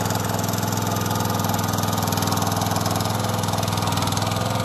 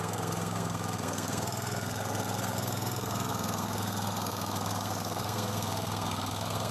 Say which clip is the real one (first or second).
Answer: first